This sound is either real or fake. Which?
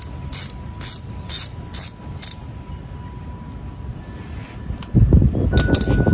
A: real